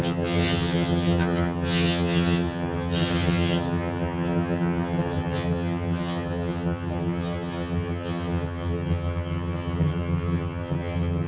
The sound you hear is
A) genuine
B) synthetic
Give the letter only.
B